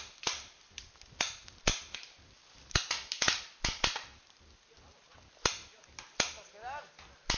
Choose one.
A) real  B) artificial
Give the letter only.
A